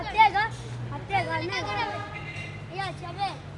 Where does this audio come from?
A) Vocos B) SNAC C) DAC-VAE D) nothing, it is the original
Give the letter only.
D